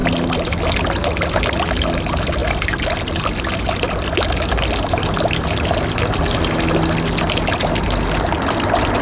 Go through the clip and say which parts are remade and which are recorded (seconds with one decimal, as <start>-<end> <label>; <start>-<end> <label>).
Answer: 0.0-9.0 recorded